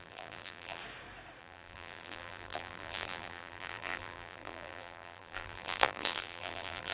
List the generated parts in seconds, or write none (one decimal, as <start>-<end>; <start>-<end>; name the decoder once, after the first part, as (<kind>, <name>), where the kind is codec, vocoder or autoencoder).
0.0-0.8 (vocoder, BigVGAN v2); 1.4-6.9